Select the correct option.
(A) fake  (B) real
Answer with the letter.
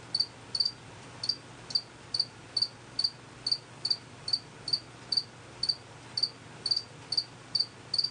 B